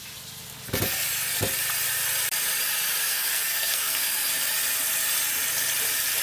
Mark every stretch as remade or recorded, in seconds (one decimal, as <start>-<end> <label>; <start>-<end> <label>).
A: 0.0-3.0 recorded; 3.0-4.3 remade; 4.3-6.2 recorded